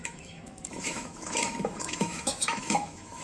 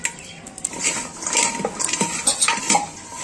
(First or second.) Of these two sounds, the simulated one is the first